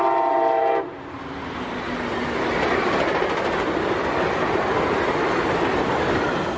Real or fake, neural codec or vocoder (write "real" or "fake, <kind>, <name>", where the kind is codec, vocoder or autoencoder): real